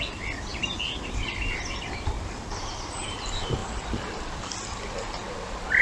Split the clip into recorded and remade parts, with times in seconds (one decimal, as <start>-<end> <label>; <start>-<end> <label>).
0.0-0.5 recorded; 0.5-3.1 remade; 3.1-5.8 recorded